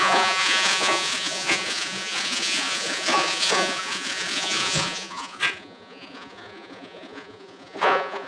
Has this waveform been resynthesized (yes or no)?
yes